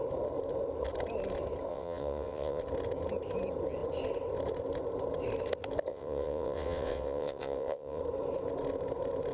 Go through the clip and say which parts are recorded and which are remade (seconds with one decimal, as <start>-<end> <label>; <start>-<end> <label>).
0.0-1.7 recorded; 1.7-2.6 remade; 2.6-5.9 recorded; 5.9-8.0 remade; 8.0-9.3 recorded